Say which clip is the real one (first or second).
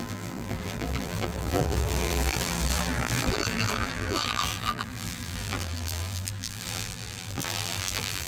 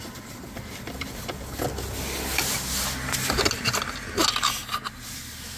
second